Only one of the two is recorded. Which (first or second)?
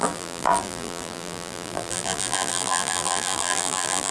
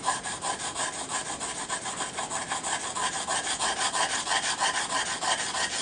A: second